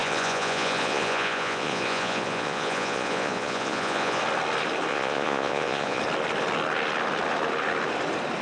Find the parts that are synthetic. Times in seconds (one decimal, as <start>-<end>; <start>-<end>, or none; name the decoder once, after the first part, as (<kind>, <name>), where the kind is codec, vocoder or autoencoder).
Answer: 0.0-4.2 (vocoder, Vocos); 4.9-6.0

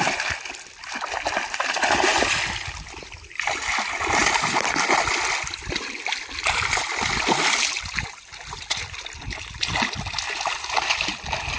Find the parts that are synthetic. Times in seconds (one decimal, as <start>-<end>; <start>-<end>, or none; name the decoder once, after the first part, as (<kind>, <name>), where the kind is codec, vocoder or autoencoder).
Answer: none

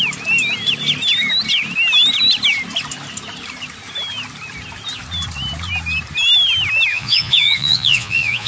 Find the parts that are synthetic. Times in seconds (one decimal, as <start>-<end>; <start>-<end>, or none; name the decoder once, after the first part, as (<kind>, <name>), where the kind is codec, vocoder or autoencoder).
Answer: 6.9-8.5 (vocoder, Vocos)

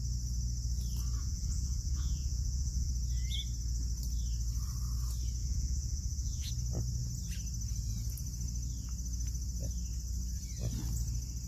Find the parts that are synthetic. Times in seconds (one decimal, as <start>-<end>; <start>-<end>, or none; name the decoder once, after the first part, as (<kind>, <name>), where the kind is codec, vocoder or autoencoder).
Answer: 1.2-2.9 (vocoder, Vocos); 5.4-6.5